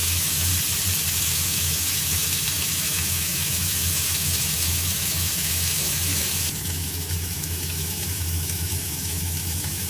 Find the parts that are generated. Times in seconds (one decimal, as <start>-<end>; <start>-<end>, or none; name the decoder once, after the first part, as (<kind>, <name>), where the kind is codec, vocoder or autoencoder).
0.0-0.5 (autoencoder, DAC-VAE); 1.2-9.9